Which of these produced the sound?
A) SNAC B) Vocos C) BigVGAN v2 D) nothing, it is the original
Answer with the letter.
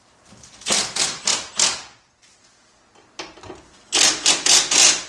D